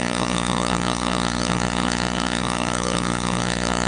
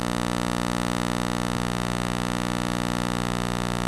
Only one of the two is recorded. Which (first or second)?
second